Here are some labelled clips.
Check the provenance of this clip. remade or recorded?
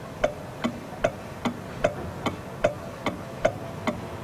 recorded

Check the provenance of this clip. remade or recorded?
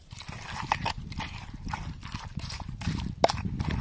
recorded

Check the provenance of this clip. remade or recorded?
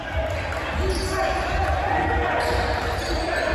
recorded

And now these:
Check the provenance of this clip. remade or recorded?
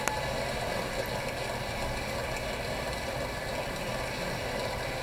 recorded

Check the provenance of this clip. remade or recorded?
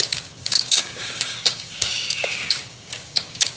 remade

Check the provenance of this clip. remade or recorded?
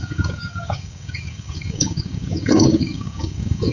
remade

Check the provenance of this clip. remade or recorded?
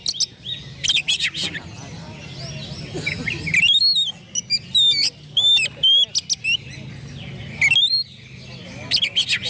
recorded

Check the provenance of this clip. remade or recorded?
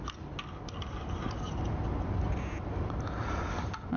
recorded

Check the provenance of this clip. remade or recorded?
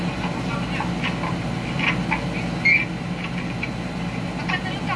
recorded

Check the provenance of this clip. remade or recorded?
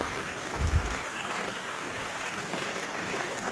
remade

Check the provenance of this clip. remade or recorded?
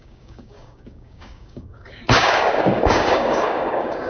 remade